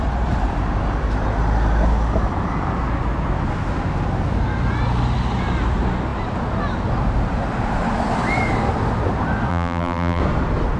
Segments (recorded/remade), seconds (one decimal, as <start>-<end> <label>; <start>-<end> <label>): 0.0-9.5 recorded; 9.5-10.2 remade; 10.2-10.8 recorded

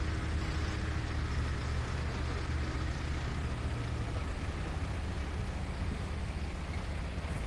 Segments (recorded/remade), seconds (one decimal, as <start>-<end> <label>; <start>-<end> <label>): 0.0-7.5 recorded

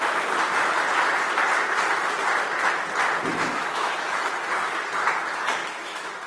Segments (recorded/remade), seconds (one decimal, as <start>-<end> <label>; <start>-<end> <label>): 0.0-3.3 recorded; 3.3-4.4 remade; 4.4-5.6 recorded; 5.6-6.3 remade